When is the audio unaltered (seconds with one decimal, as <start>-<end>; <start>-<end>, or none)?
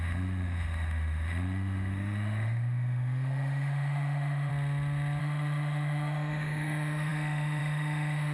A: 4.5-5.2